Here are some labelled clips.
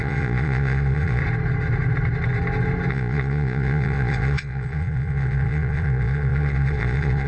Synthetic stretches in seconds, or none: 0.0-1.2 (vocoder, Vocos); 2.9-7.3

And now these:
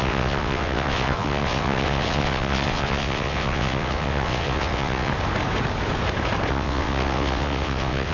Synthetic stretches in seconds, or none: 0.0-5.1 (vocoder, WaveNeXt); 6.5-8.1